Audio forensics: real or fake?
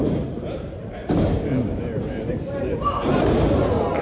fake